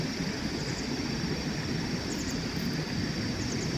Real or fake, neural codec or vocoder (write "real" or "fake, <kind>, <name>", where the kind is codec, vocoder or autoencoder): real